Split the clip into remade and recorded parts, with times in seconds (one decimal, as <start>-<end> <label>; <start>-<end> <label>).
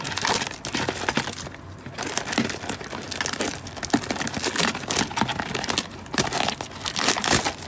0.0-7.7 recorded